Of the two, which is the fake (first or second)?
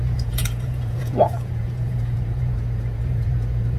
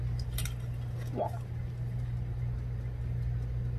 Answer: first